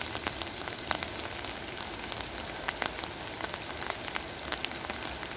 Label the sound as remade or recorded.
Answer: recorded